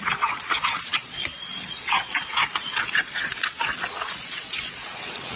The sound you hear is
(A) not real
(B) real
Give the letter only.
A